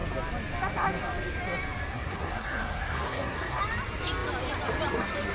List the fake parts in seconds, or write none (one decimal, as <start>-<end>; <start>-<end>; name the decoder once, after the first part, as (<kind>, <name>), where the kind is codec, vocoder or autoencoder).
1.9-3.6 (codec, SNAC)